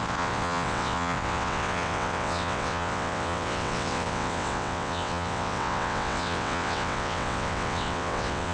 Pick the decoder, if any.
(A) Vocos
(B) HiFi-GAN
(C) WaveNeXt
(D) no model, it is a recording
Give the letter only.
C